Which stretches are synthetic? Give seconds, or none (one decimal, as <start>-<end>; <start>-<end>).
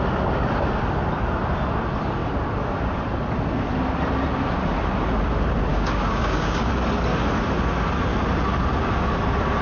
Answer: 5.7-6.7